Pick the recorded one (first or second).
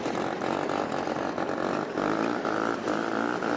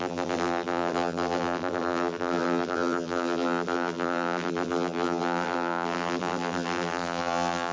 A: first